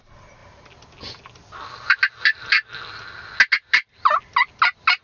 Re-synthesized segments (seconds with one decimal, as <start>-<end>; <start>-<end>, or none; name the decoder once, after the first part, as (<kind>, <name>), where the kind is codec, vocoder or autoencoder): none